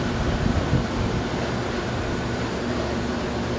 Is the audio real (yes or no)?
yes